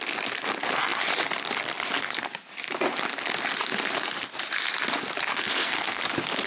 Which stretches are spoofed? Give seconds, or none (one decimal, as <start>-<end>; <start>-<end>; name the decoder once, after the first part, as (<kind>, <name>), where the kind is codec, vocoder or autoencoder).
5.3-6.0 (codec, SNAC)